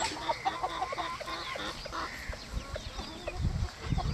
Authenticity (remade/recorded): recorded